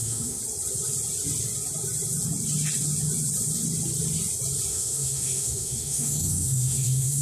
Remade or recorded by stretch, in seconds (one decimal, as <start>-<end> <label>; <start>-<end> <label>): 0.0-0.4 remade; 0.4-4.7 recorded; 4.7-7.2 remade